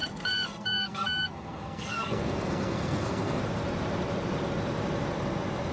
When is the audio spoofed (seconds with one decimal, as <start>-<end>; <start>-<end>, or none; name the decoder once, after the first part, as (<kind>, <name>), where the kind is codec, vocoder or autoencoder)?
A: 0.0-3.4 (codec, SNAC)